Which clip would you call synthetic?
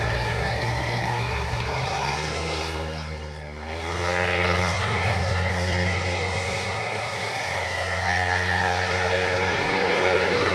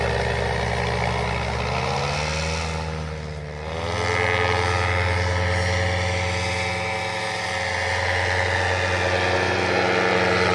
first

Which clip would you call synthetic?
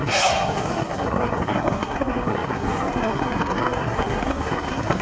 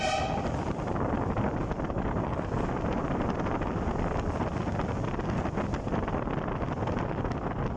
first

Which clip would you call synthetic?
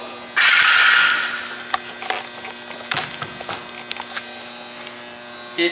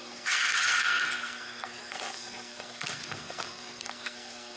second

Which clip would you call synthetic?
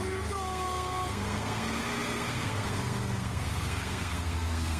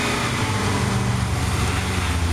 first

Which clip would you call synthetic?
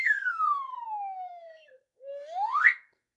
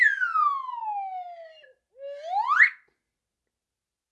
first